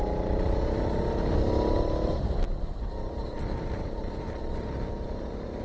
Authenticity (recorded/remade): recorded